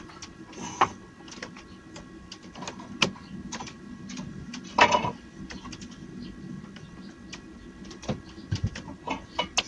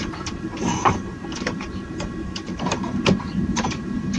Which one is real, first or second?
first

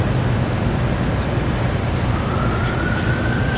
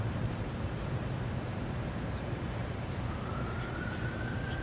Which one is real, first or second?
first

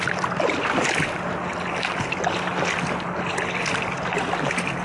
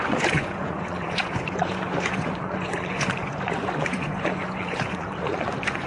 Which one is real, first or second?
first